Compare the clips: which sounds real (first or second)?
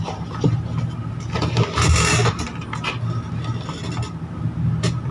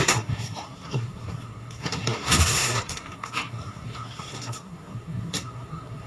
first